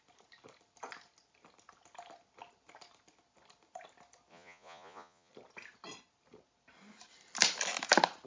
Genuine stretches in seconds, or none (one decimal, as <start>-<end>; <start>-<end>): 0.0-4.3; 5.3-8.3

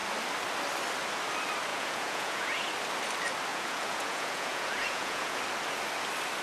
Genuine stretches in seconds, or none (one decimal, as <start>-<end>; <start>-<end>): 0.0-1.7; 2.7-3.5; 5.4-6.4

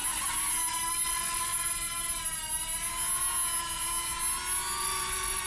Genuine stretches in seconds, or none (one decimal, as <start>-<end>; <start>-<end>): 0.0-0.9; 1.5-4.8

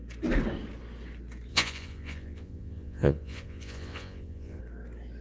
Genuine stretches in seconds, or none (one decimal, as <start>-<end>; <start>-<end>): 0.0-1.5; 4.6-5.2

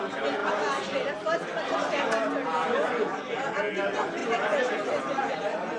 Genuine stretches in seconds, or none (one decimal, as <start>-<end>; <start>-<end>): 0.0-5.8

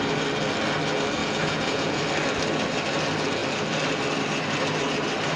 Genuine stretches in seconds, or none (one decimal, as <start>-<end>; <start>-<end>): 0.0-1.2; 2.0-5.4

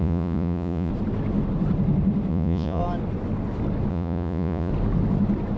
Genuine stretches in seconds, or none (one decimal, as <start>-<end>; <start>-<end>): 0.9-2.3; 2.8-3.9; 4.7-5.6